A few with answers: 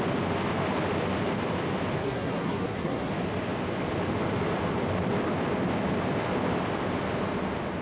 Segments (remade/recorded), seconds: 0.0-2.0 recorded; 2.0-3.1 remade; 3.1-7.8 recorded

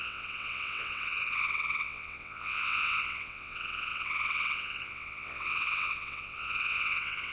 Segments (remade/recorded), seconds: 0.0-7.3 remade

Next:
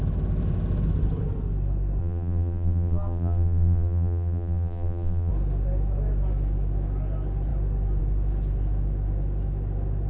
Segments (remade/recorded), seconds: 0.0-2.0 recorded; 2.0-5.3 remade; 5.3-10.1 recorded

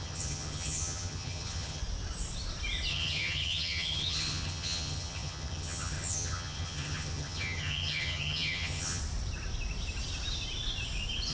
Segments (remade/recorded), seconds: 0.0-1.8 remade; 1.8-2.9 recorded; 2.9-9.0 remade; 9.0-11.3 recorded

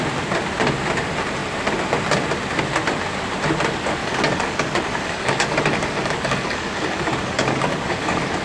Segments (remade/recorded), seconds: 0.0-4.0 recorded; 4.0-8.4 remade